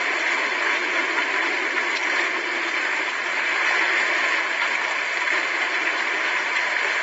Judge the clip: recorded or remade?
recorded